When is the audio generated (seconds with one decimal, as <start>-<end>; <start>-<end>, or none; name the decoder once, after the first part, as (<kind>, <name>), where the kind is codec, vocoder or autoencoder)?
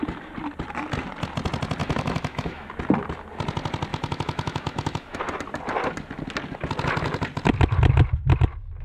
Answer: 1.8-2.7 (autoencoder, DAC-VAE); 3.9-5.2